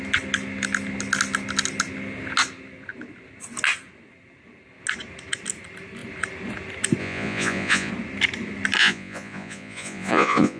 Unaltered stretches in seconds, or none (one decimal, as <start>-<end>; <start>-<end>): 0.0-7.0; 7.9-8.8